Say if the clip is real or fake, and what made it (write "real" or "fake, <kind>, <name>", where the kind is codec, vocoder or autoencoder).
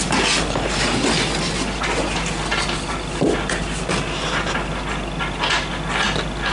real